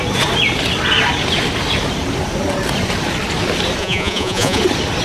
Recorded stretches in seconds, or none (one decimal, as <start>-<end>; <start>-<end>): 0.0-3.8; 4.6-5.0